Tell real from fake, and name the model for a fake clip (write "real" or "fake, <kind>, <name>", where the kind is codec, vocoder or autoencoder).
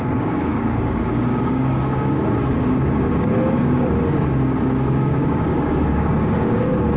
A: fake, codec, DAC